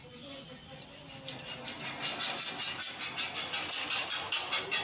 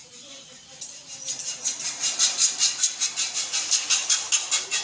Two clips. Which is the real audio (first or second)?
first